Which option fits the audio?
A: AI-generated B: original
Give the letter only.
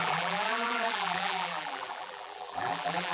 A